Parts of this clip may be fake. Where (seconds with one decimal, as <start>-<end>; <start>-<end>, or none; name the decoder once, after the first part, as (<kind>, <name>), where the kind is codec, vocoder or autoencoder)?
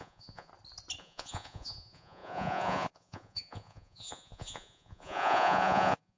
0.0-0.5 (vocoder, Vocos); 1.0-6.2